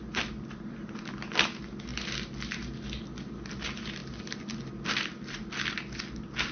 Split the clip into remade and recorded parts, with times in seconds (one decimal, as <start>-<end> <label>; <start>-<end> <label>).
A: 0.0-6.5 recorded